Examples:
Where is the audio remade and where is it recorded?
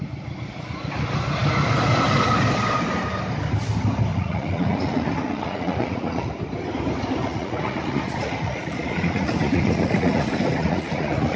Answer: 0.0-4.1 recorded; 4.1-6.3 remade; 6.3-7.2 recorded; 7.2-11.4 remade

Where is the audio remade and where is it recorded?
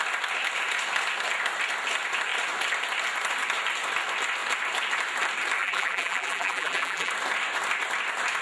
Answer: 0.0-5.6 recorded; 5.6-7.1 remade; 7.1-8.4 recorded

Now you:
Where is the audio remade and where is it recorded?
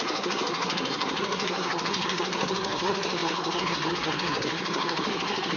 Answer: 0.0-5.6 remade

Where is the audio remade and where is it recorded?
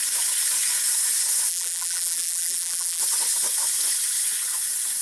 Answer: 0.0-1.5 recorded; 1.5-3.0 remade; 3.0-5.0 recorded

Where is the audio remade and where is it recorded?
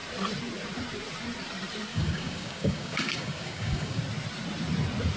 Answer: 0.0-1.9 recorded; 1.9-4.0 remade; 4.0-5.2 recorded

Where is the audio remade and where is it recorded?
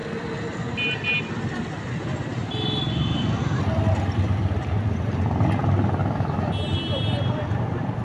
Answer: 0.0-6.0 recorded; 6.0-6.5 remade; 6.5-8.0 recorded